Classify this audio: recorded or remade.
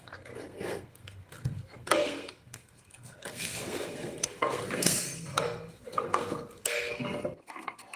remade